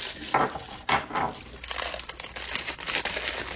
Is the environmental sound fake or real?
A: real